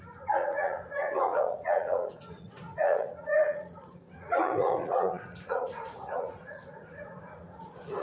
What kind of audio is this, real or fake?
fake